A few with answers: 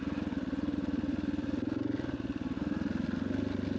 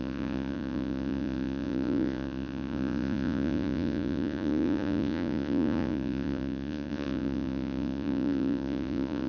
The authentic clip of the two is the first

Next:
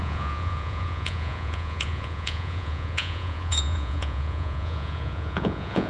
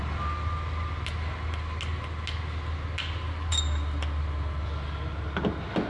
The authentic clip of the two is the second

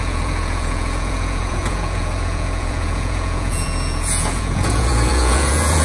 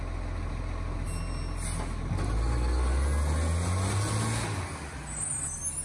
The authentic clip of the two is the second